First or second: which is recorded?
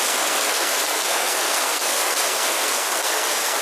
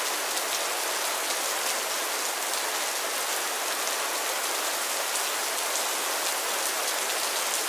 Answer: second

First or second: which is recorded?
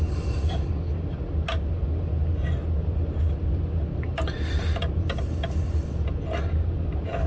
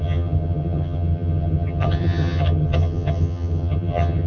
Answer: first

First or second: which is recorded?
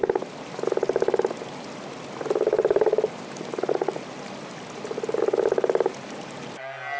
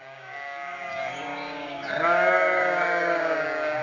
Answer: first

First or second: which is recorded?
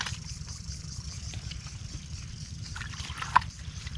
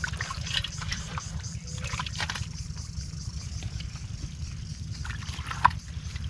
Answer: second